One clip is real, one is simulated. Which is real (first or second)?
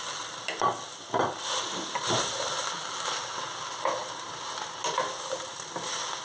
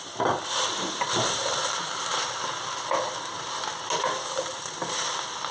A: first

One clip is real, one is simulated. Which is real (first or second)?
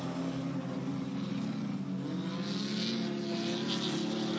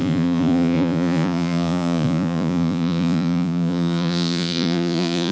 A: first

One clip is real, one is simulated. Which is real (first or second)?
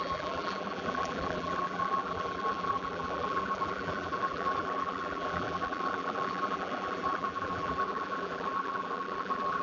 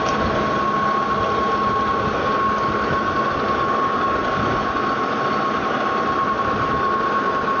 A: second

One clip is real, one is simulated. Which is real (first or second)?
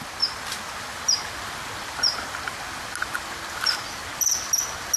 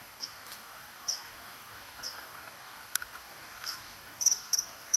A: first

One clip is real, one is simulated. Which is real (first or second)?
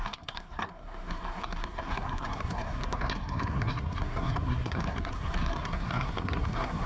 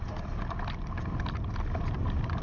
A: second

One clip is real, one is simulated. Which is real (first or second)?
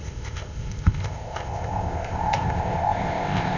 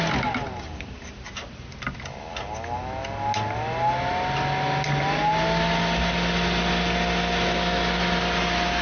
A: second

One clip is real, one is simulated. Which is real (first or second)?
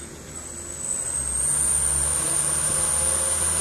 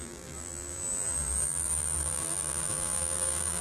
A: first